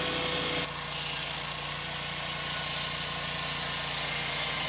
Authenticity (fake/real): real